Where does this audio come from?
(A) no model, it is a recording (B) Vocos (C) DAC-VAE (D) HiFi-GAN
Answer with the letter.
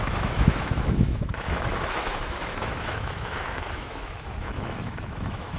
C